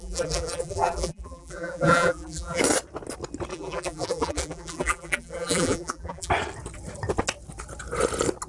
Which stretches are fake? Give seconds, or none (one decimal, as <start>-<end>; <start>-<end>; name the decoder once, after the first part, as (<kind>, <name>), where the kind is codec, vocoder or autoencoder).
0.0-2.6 (vocoder, BigVGAN v2); 3.5-6.3